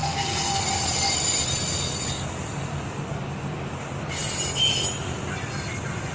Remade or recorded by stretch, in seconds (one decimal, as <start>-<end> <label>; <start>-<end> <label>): 0.0-0.6 remade; 0.6-6.1 recorded